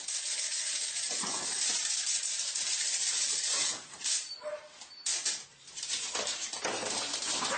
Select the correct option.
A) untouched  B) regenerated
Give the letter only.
A